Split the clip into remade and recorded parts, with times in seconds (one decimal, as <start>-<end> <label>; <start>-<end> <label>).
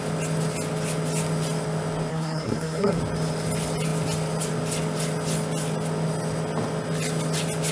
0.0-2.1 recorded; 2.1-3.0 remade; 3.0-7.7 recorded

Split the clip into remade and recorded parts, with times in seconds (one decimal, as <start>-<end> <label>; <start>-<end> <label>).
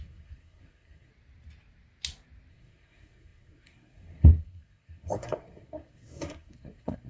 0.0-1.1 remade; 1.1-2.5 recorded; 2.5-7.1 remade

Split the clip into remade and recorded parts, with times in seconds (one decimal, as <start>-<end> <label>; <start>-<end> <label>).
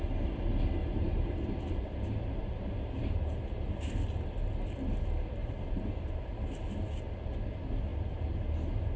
0.0-0.8 recorded; 0.8-2.5 remade; 2.5-5.4 recorded; 5.4-6.5 remade; 6.5-9.0 recorded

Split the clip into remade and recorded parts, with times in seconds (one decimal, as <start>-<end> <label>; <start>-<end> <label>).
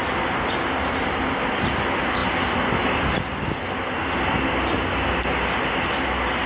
0.0-6.5 recorded